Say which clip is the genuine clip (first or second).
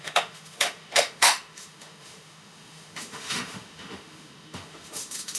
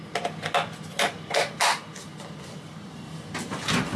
second